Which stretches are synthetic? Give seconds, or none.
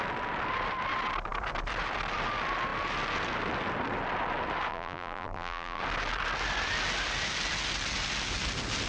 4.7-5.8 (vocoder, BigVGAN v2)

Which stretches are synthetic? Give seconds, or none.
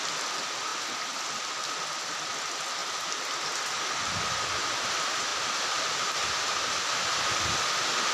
none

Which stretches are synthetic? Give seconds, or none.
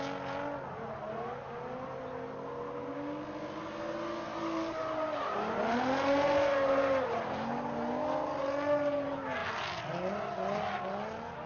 none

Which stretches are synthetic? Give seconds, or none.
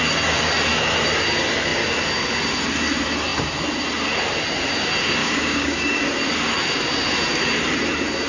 5.2-6.0 (codec, DAC)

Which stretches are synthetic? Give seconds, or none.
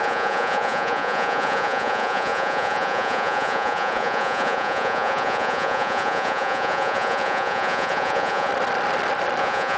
0.0-8.5 (vocoder, Vocos); 9.4-9.8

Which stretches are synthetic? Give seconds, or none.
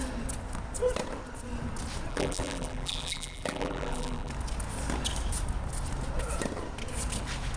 2.1-4.3 (vocoder, BigVGAN v2)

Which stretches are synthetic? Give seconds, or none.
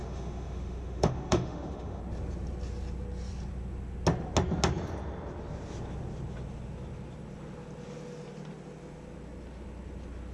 0.0-2.0 (autoencoder, DAC-VAE)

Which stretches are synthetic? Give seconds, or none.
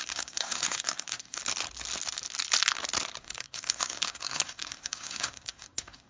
0.0-1.4 (codec, SNAC); 3.2-6.1